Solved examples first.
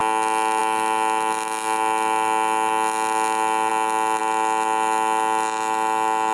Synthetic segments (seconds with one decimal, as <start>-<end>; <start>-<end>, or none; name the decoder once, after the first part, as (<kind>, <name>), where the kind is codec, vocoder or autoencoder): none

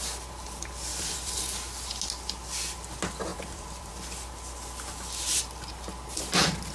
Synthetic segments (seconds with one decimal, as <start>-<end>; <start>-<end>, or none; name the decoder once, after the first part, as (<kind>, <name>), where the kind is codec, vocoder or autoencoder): 0.9-1.4 (vocoder, BigVGAN v2); 3.3-3.9

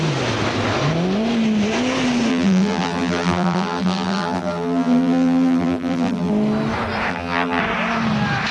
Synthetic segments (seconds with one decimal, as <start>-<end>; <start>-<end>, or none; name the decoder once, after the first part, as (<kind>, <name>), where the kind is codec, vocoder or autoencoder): 2.3-6.3 (vocoder, BigVGAN v2); 7.1-7.6

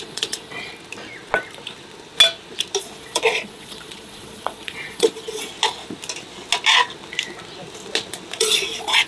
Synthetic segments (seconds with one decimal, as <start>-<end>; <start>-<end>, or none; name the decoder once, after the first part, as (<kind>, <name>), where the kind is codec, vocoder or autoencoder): 0.0-0.7 (vocoder, Vocos); 2.8-5.5; 8.4-9.1

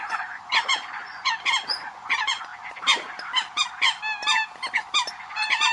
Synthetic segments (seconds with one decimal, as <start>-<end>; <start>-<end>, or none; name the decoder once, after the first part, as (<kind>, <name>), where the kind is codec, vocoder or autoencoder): 0.0-2.5 (vocoder, Vocos); 5.2-5.7

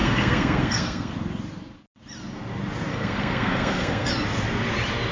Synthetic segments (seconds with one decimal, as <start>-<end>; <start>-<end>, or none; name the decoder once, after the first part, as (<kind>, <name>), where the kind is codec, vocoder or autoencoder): 0.0-1.1 (codec, SNAC); 2.9-4.1